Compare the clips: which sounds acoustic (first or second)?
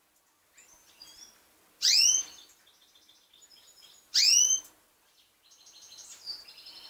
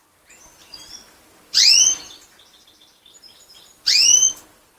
first